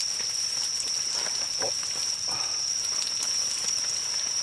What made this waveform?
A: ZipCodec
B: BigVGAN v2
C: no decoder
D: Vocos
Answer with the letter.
C